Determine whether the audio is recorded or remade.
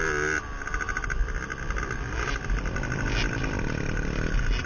recorded